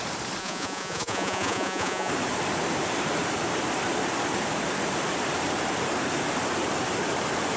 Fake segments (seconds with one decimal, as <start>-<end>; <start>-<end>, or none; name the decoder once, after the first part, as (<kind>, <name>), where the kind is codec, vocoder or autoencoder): 0.4-2.1 (vocoder, Vocos)